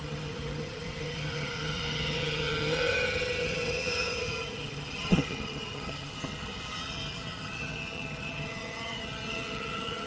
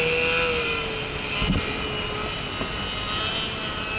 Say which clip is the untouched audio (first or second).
second